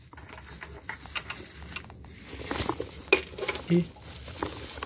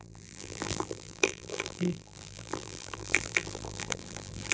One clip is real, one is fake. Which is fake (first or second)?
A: second